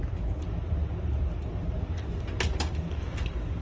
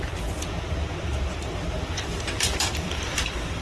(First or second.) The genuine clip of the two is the first